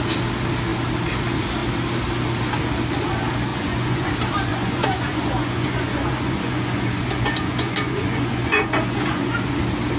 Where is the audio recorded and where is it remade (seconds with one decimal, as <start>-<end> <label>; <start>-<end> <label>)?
0.0-3.5 recorded; 3.5-4.1 remade; 4.1-4.5 recorded; 4.5-9.6 remade; 9.6-10.0 recorded